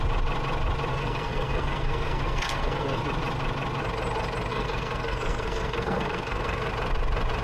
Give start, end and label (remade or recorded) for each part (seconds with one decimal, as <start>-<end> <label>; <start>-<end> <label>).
0.0-0.9 recorded; 0.9-3.0 remade; 3.0-4.5 recorded; 4.5-6.7 remade; 6.7-7.4 recorded